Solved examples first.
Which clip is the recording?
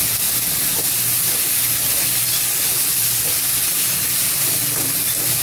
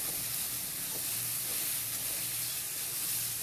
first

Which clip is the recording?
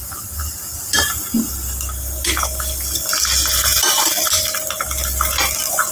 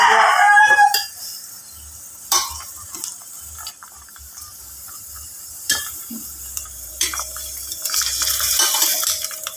first